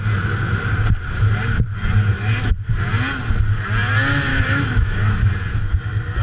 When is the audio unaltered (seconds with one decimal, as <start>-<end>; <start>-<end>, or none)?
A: 0.0-4.3; 5.3-6.2